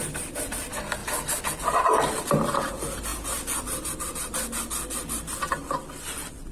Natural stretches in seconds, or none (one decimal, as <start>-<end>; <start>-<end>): 0.0-3.1; 4.0-6.5